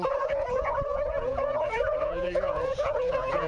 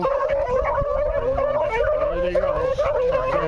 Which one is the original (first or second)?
second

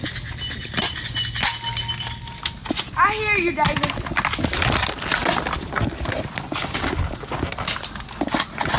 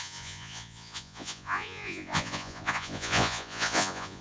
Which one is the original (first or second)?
first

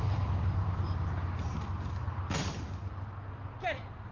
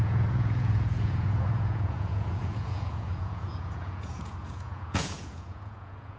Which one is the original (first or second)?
first